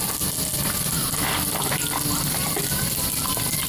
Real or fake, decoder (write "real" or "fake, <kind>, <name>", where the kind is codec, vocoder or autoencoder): real